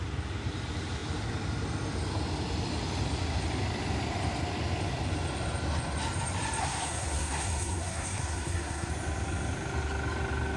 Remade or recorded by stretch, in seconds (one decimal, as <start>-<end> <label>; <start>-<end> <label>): 0.0-6.6 recorded; 6.6-8.9 remade; 8.9-10.6 recorded